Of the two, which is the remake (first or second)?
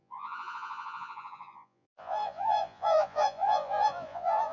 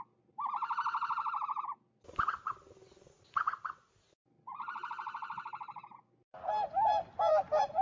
first